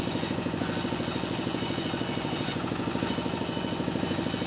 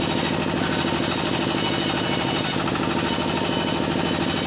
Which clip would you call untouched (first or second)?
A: second